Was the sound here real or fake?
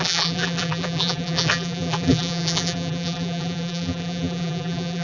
fake